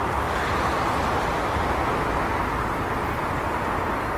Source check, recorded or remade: recorded